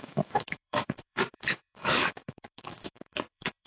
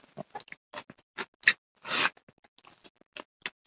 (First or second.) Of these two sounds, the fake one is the first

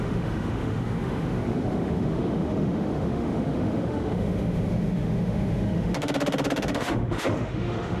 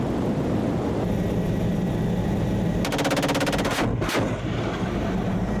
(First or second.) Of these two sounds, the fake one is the first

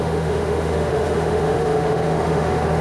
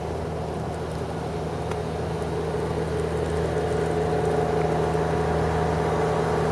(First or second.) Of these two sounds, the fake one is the first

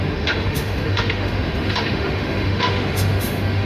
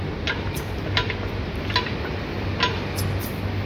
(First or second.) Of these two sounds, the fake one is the first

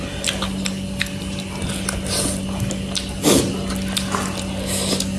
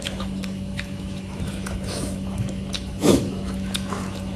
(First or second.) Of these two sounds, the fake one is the second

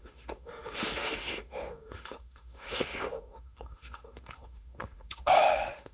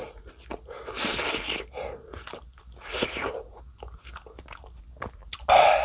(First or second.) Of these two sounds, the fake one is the first